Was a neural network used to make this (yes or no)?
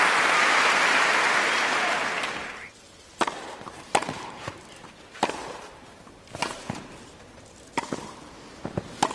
yes